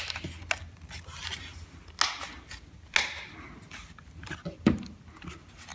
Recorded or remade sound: recorded